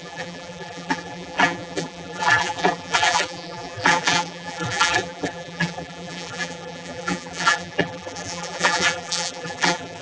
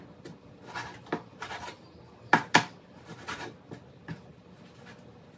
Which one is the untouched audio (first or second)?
second